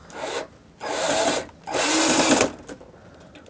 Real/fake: real